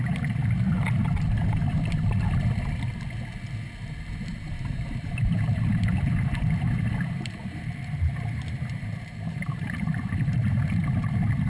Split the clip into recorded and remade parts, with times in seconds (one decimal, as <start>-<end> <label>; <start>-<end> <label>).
0.0-0.4 remade; 0.4-4.5 recorded; 4.5-11.5 remade